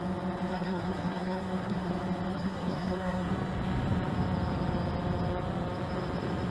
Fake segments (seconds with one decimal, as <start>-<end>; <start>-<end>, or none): 0.5-1.9; 2.3-3.3